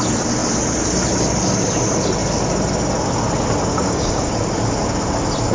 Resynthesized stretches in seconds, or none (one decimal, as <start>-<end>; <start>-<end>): 3.7-4.3

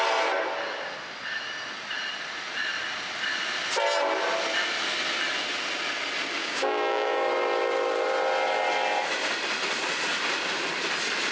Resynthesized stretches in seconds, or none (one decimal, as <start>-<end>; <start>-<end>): 6.4-7.3

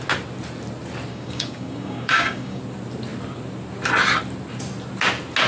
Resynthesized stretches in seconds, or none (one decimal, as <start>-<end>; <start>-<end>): 1.1-2.6

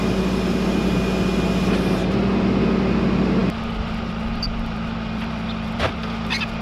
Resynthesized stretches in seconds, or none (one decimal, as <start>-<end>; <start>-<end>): none

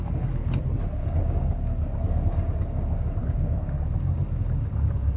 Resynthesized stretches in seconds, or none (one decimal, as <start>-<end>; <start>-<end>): 0.0-0.4; 1.0-5.2

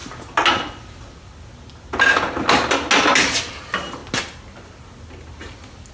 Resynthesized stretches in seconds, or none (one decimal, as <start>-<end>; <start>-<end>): none

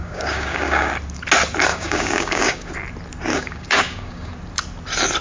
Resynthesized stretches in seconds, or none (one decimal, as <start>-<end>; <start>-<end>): 0.0-0.9; 1.7-2.7; 3.3-4.3

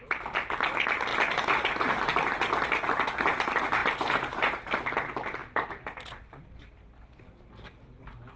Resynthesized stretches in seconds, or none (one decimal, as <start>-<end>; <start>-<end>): none